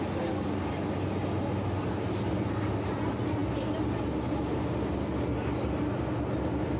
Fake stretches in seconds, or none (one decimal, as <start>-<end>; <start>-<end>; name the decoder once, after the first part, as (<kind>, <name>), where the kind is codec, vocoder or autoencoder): none